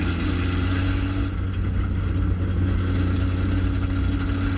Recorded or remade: recorded